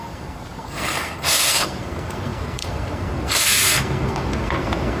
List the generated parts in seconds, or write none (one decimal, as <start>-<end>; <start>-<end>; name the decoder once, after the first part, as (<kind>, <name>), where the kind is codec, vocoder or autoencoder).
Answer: 0.0-5.0 (codec, SNAC)